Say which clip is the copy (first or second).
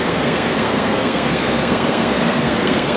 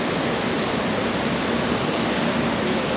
first